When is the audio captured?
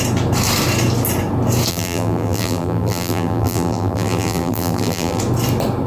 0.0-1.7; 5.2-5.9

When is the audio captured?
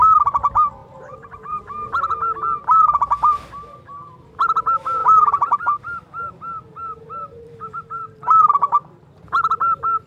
0.0-0.8; 1.6-5.0; 6.3-6.7; 9.2-10.1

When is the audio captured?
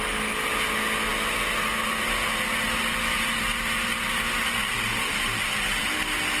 0.0-4.6; 5.9-6.4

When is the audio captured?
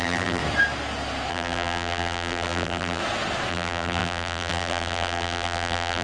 0.4-1.3; 3.0-3.5